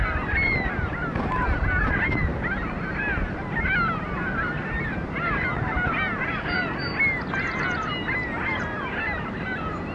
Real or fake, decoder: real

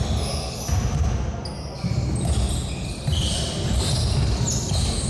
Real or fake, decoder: real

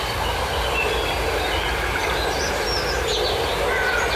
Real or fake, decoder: real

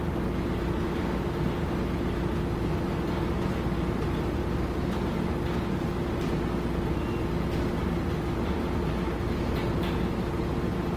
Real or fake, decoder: real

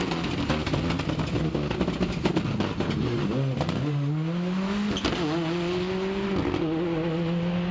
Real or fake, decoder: real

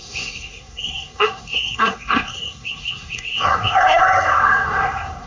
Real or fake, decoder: fake, codec, SNAC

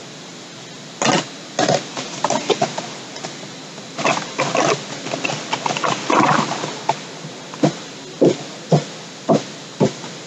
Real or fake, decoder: real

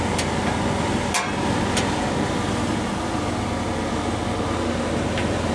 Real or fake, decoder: real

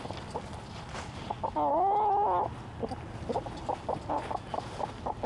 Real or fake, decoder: real